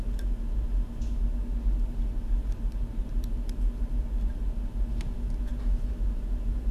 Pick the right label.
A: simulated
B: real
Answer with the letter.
A